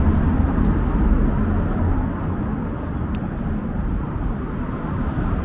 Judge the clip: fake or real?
real